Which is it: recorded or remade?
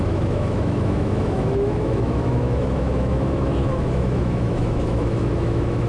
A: remade